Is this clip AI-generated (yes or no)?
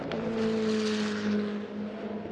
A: no